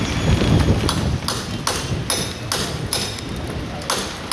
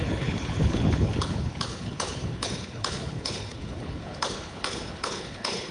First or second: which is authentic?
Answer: first